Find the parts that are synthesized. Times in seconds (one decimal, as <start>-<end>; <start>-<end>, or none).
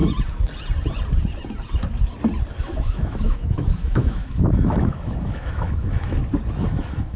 2.6-6.2; 6.8-7.2